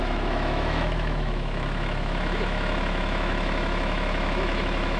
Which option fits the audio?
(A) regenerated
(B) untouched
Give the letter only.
A